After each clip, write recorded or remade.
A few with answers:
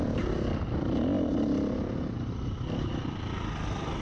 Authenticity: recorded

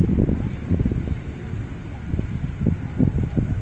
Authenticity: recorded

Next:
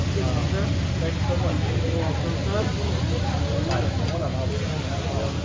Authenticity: recorded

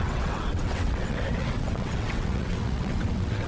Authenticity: remade